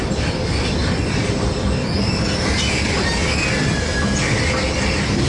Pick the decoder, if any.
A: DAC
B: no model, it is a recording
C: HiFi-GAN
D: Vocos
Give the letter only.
B